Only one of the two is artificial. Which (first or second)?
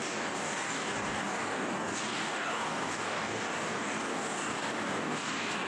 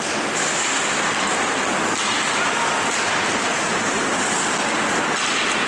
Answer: first